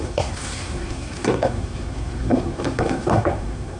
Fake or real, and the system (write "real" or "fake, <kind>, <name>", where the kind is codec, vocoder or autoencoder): fake, codec, SNAC